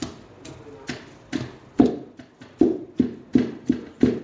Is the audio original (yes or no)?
yes